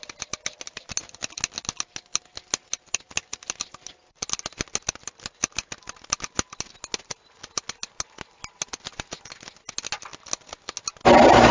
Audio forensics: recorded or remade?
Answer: recorded